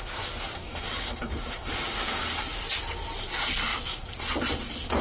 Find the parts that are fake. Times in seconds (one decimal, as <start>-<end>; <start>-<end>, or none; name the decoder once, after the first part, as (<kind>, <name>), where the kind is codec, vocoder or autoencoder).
0.5-2.2 (codec, DAC)